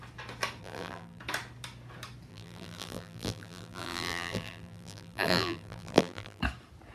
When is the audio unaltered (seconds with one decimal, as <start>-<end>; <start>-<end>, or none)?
0.0-0.6; 1.2-2.3; 6.4-6.9